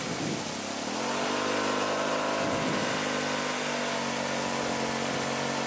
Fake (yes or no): no